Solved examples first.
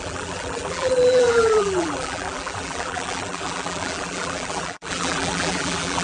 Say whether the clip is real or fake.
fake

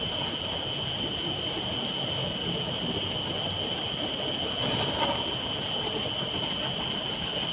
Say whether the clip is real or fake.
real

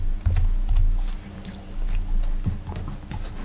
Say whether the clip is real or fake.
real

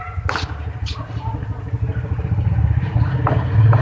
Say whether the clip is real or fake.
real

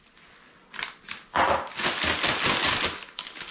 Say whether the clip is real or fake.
real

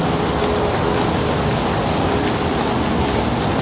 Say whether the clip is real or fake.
real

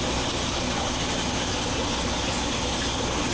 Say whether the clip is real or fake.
real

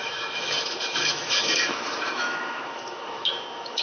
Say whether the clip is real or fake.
fake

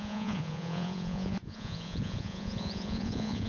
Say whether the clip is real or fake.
fake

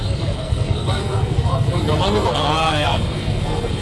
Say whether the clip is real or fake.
fake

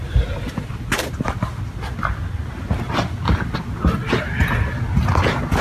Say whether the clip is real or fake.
real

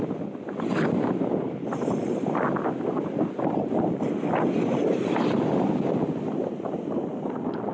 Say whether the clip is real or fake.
real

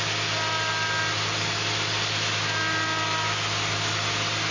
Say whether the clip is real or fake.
real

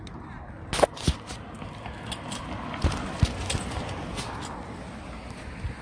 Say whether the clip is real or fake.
real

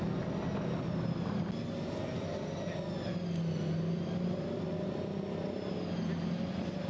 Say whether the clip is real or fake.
real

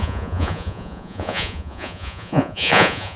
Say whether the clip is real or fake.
fake